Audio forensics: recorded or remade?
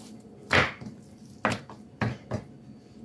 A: recorded